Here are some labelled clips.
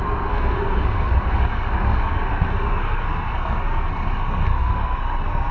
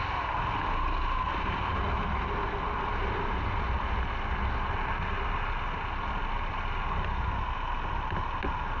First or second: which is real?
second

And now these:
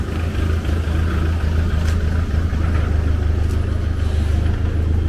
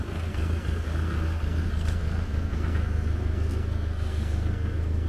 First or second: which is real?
first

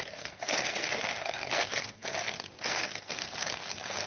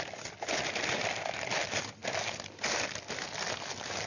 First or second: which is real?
second